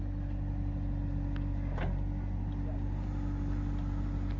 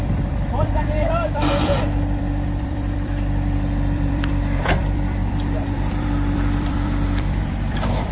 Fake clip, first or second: second